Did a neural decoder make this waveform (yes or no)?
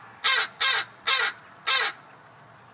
no